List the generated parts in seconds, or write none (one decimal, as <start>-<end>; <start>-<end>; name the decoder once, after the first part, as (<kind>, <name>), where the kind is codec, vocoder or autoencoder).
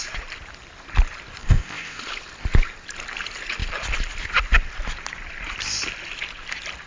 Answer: 1.4-2.0 (codec, ZipCodec)